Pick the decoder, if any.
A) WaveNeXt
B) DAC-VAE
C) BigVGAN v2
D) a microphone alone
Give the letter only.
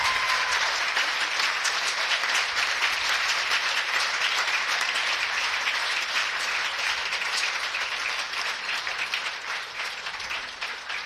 C